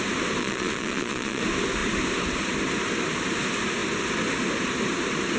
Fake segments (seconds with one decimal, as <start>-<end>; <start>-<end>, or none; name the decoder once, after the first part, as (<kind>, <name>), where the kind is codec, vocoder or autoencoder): 0.4-1.4 (vocoder, Vocos)